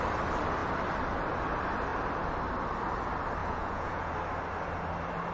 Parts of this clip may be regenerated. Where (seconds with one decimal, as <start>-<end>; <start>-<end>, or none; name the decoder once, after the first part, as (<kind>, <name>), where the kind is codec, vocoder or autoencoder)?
3.4-4.1 (vocoder, Vocos)